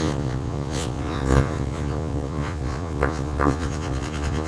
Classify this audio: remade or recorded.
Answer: remade